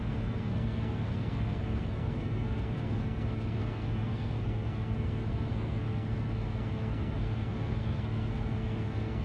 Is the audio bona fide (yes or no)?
no